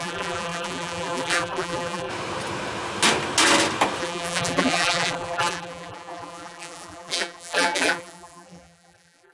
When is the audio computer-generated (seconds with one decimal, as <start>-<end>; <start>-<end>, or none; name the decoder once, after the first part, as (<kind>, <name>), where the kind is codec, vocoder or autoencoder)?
0.0-2.1 (vocoder, BigVGAN v2); 4.0-9.3